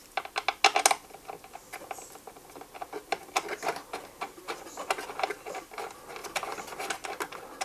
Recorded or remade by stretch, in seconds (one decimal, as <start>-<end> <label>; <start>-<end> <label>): 0.0-7.6 recorded